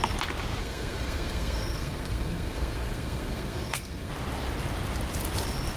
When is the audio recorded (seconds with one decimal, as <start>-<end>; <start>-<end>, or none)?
0.0-0.6; 4.1-5.8